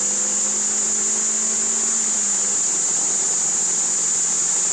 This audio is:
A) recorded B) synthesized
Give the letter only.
A